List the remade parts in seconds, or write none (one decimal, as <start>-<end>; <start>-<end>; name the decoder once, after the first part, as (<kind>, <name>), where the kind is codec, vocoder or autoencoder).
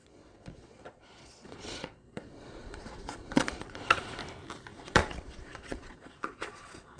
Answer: 0.0-4.2 (vocoder, Vocos); 4.7-7.0